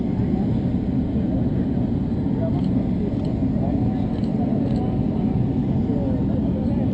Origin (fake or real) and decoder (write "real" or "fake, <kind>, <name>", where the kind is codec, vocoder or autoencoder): real